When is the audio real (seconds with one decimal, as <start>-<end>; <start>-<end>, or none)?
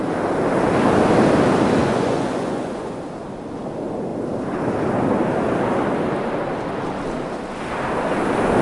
0.0-1.8; 3.0-8.6